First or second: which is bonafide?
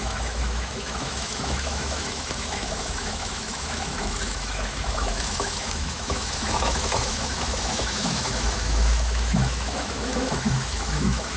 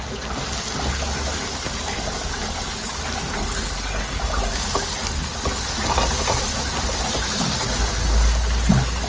second